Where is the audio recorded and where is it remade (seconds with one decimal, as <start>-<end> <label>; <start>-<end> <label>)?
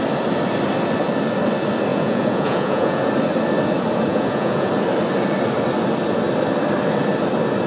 0.0-1.9 recorded; 1.9-3.1 remade; 3.1-4.1 recorded; 4.1-4.7 remade; 4.7-7.7 recorded